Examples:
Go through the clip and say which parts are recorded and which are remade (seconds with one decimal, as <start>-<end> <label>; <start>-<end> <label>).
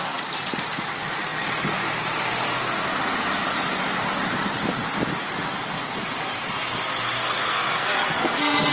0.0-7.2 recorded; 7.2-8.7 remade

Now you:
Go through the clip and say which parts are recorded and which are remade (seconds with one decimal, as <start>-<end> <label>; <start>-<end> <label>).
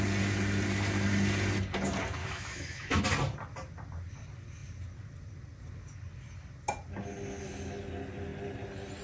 0.0-2.2 recorded; 2.2-3.0 remade; 3.0-9.0 recorded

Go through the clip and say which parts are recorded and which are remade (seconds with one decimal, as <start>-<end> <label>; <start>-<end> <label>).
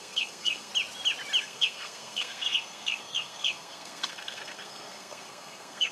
0.0-0.7 remade; 0.7-1.4 recorded; 1.4-5.9 remade